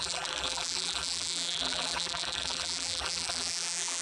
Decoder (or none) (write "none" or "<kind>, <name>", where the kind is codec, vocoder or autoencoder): vocoder, BigVGAN v2